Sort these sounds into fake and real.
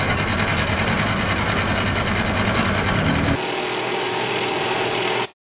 real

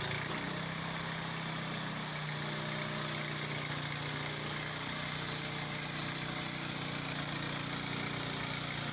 real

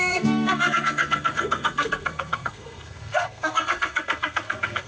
fake